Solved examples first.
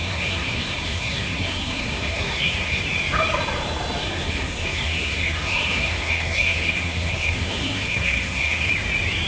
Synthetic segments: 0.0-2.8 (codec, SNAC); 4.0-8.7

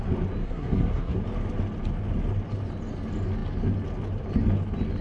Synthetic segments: 0.4-1.2 (codec, SNAC)

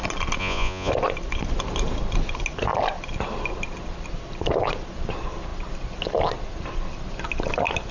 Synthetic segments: 0.4-0.9 (vocoder, Vocos)

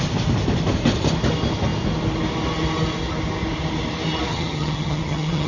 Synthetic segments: 4.3-5.5 (vocoder, HiFi-GAN)